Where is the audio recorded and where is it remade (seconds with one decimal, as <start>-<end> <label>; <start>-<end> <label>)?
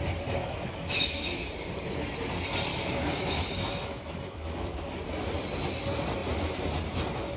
0.0-0.4 recorded; 0.4-1.5 remade; 1.5-2.7 recorded; 2.7-4.9 remade; 4.9-7.4 recorded